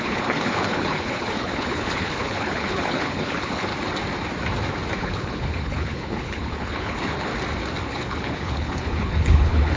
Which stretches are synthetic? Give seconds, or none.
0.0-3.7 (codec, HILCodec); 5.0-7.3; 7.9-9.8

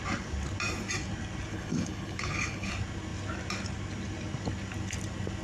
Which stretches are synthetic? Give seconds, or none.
1.5-2.7 (codec, HILCodec)